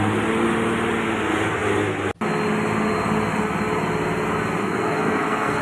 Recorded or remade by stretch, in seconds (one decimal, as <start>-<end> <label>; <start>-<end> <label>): 0.0-4.6 recorded; 4.6-5.6 remade